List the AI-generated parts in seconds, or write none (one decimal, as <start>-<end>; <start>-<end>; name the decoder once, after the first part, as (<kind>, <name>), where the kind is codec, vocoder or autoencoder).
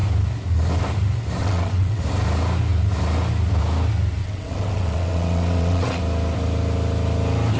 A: 1.4-2.0 (vocoder, WaveNeXt); 4.2-6.0